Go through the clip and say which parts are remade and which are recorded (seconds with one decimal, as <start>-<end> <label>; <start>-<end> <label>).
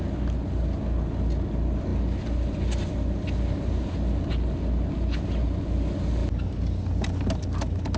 0.0-8.0 recorded